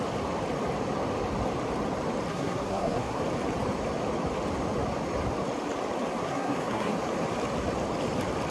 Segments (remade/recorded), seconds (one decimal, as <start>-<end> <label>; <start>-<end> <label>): 0.0-2.3 recorded; 2.3-3.2 remade; 3.2-6.2 recorded; 6.2-6.9 remade; 6.9-8.5 recorded